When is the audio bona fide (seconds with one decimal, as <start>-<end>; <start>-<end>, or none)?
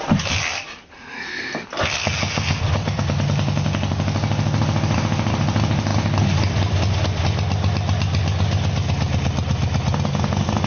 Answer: 0.0-2.0; 2.6-10.7